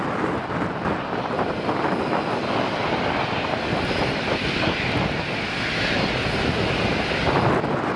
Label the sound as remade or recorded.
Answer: recorded